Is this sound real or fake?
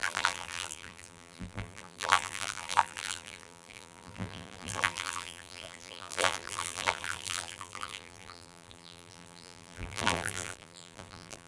fake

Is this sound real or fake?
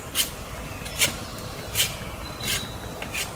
real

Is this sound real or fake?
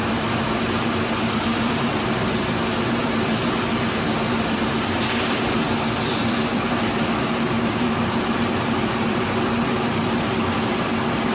fake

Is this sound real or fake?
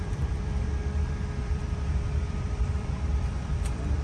fake